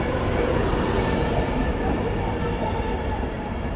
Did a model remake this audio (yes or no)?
no